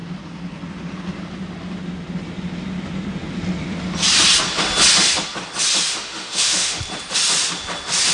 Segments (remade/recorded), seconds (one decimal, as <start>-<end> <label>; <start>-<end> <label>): 0.0-5.9 recorded; 5.9-6.8 remade; 6.8-8.1 recorded